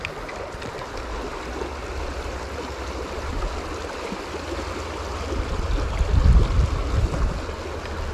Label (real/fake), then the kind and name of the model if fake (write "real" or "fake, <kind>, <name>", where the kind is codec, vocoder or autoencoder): real